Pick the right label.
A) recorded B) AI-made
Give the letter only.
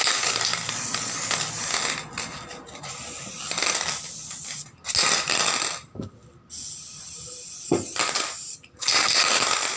A